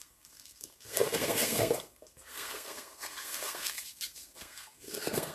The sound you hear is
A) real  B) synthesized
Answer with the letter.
B